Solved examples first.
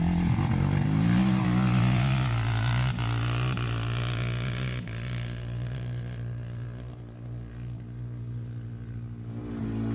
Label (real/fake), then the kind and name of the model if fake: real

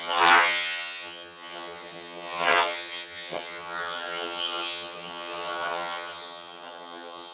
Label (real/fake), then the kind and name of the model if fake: fake, vocoder, HiFi-GAN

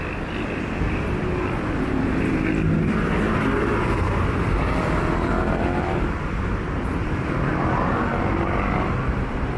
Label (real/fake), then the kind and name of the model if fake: real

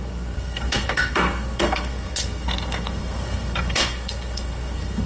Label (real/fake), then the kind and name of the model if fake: fake, codec, SNAC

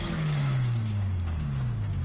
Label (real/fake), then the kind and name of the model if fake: fake, codec, DAC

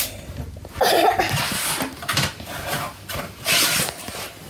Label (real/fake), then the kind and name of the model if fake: fake, vocoder, BigVGAN v2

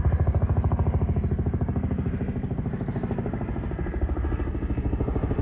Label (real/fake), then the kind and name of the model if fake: real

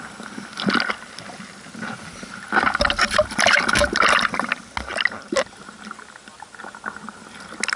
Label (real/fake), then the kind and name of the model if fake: real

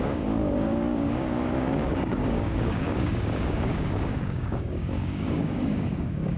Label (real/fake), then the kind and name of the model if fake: fake, codec, DAC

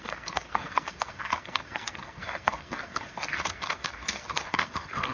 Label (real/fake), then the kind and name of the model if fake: fake, codec, SNAC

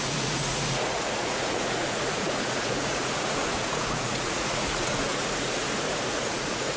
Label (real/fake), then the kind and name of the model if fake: fake, vocoder, Vocos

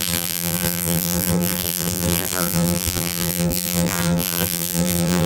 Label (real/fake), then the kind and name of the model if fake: fake, vocoder, BigVGAN v2